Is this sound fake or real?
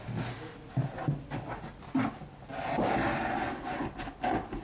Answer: real